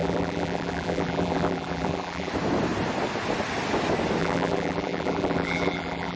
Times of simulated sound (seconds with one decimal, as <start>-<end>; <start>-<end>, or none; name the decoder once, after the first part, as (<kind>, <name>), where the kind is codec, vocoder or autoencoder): 0.0-2.3 (vocoder, BigVGAN v2); 4.2-6.2